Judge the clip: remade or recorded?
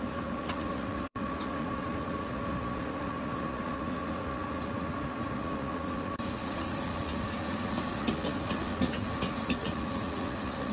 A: remade